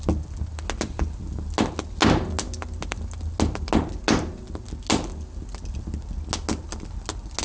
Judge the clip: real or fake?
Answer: real